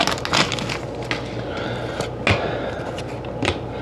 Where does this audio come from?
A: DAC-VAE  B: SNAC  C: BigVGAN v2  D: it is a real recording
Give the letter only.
D